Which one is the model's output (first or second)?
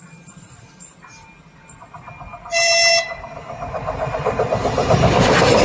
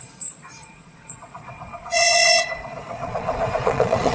second